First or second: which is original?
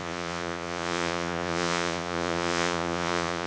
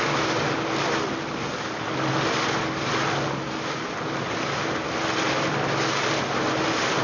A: second